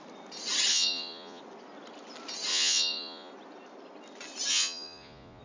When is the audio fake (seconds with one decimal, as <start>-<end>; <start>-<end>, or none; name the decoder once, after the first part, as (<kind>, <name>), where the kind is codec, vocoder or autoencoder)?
0.7-1.4 (vocoder, Vocos); 2.5-3.3; 4.5-5.4